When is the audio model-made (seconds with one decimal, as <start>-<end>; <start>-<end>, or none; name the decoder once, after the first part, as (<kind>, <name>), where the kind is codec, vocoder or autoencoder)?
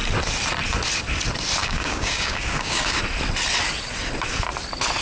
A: 1.6-3.0 (codec, DAC)